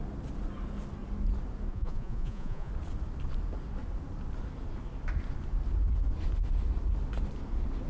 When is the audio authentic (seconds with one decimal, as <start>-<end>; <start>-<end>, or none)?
0.0-1.7; 2.7-7.9